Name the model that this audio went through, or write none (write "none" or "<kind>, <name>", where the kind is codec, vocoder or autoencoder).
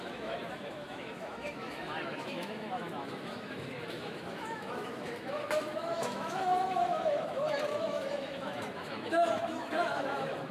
autoencoder, DAC-VAE